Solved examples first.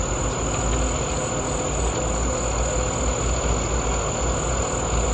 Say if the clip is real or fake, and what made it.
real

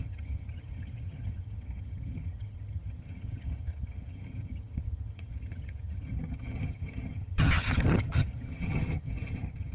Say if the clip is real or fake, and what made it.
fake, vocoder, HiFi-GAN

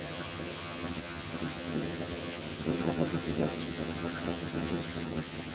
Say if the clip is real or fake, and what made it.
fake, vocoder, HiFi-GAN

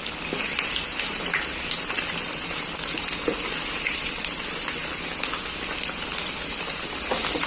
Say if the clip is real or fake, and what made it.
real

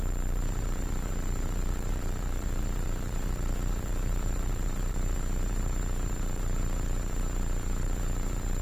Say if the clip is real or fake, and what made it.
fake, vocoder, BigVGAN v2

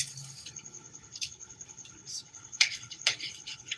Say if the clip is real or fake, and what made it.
fake, codec, HILCodec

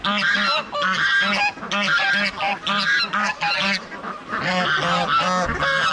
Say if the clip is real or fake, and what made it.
real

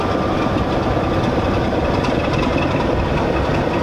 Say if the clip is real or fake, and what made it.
real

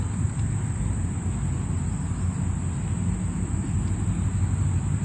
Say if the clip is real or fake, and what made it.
real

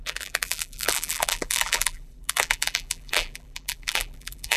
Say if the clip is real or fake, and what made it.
fake, vocoder, BigVGAN v2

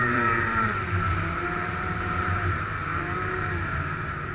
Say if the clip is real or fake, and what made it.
fake, vocoder, BigVGAN v2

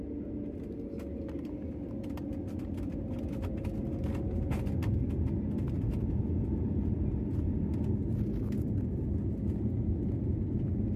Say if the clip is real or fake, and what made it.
real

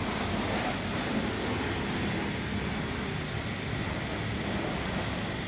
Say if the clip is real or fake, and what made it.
real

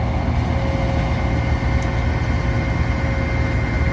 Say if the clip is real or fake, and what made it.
real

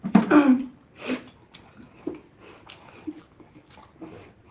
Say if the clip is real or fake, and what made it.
real